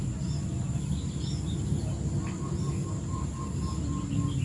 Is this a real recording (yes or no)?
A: yes